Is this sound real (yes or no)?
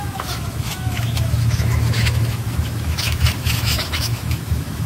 no